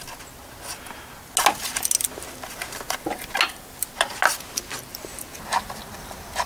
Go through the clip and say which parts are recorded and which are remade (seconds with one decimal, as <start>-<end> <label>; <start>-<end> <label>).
0.0-6.5 recorded